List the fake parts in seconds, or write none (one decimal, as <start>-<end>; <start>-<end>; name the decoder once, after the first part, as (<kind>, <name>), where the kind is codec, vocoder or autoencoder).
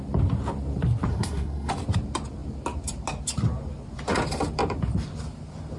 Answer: 1.1-1.7 (codec, SNAC)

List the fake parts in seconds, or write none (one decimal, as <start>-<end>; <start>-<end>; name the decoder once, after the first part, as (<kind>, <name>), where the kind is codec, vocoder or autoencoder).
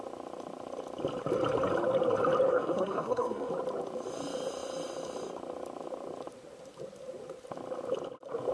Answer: 2.5-3.5 (codec, SNAC)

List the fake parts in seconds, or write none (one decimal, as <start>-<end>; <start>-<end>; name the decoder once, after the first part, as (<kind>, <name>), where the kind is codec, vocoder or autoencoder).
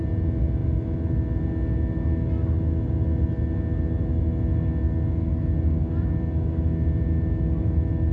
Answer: none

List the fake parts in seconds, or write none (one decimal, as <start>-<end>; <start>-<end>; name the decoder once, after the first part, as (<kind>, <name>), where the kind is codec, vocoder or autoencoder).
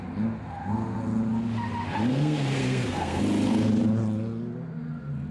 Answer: 2.1-3.2 (codec, SNAC)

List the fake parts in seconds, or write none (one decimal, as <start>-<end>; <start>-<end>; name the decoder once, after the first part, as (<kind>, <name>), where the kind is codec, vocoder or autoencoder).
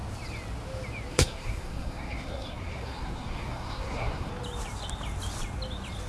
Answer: 1.1-4.3 (codec, SNAC)